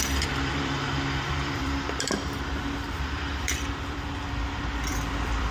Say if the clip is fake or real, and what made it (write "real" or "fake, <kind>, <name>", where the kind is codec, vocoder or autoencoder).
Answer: fake, vocoder, BigVGAN v2